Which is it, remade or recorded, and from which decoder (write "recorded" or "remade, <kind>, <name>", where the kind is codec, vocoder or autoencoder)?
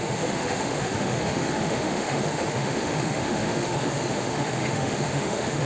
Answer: remade, autoencoder, DAC-VAE